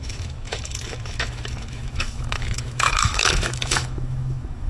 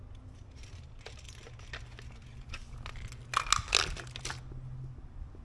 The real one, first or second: second